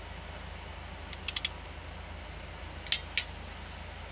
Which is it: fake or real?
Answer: real